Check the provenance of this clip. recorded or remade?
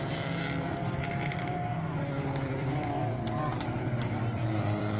remade